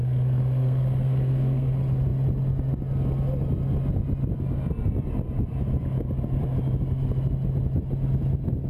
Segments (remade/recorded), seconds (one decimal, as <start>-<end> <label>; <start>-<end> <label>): 0.0-1.7 remade; 1.7-8.7 recorded